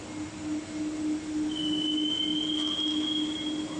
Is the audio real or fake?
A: real